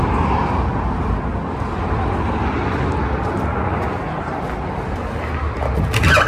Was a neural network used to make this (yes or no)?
no